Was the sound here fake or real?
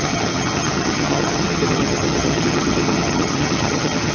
fake